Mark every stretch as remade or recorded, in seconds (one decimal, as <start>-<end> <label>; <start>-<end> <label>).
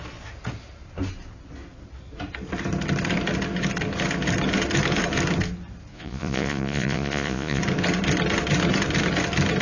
0.0-5.9 recorded; 5.9-7.6 remade; 7.6-9.6 recorded